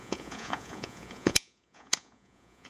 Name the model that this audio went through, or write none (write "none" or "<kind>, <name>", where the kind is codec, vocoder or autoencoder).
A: vocoder, Vocos